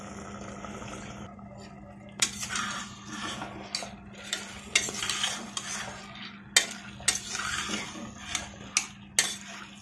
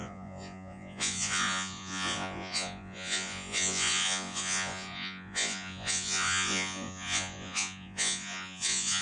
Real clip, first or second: first